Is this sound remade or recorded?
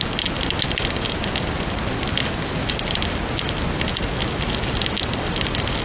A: recorded